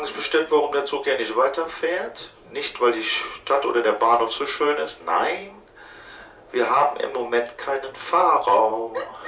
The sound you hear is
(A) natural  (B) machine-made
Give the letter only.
B